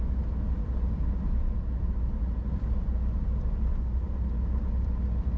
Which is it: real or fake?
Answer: real